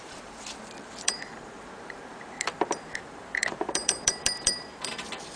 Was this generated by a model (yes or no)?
yes